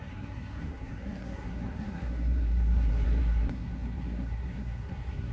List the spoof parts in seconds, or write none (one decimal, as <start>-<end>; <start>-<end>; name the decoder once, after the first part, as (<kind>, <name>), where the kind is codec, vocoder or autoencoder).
0.0-5.3 (codec, SNAC)